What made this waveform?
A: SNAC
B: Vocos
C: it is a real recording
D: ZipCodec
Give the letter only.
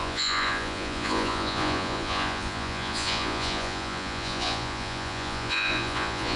B